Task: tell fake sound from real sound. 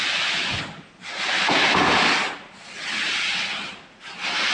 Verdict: real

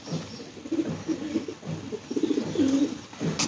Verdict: real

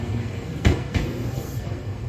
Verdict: fake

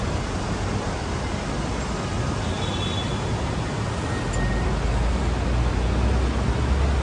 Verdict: real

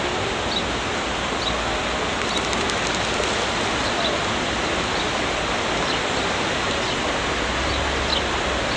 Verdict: real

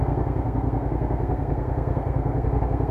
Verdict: fake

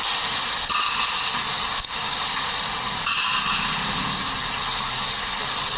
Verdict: real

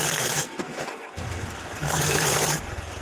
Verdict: fake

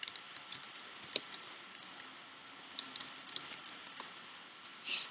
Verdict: real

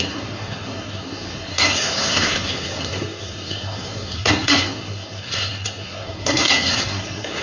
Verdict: fake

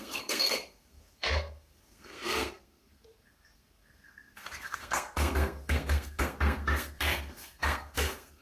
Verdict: fake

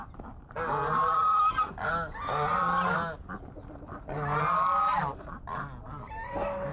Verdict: real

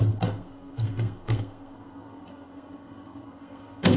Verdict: fake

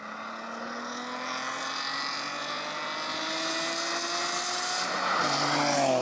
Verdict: real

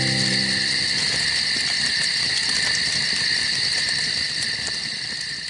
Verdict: real